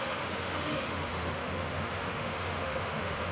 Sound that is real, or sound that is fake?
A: fake